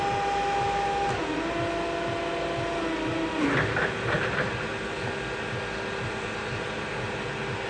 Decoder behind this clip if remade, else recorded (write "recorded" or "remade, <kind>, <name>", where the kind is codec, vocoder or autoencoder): recorded